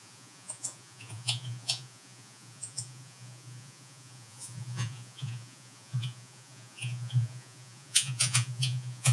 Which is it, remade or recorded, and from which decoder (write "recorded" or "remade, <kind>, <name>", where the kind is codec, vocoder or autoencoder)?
remade, vocoder, Vocos